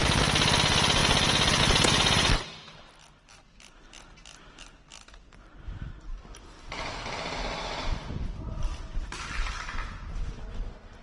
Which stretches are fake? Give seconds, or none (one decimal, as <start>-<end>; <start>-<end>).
4.9-7.4